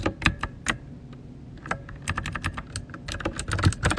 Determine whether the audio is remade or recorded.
recorded